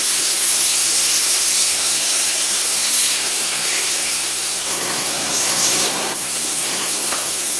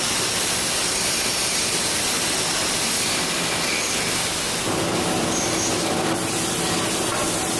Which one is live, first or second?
second